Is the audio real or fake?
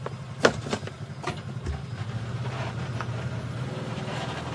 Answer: real